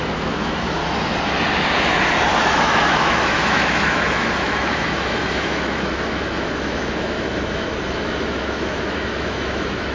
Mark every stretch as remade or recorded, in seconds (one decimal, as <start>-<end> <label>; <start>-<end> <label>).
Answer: 0.0-0.8 remade; 0.8-2.5 recorded; 2.5-9.9 remade